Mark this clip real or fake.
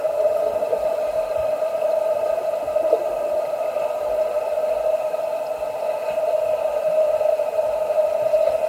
real